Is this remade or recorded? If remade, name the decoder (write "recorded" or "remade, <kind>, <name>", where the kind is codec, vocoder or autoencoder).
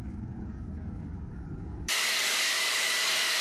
remade, codec, DAC